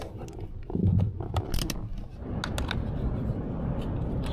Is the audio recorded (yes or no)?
yes